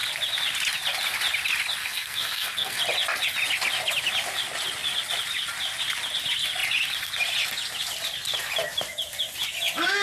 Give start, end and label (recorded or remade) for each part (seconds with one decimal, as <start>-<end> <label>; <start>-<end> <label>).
0.0-1.8 recorded; 1.8-2.8 remade; 2.8-10.0 recorded